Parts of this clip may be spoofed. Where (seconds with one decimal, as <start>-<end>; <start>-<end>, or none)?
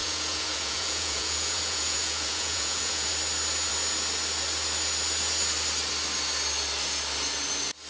0.0-3.1